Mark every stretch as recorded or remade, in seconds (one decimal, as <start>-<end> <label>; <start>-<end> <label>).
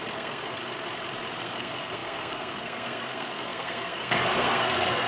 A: 0.0-0.6 remade; 0.6-1.4 recorded; 1.4-5.1 remade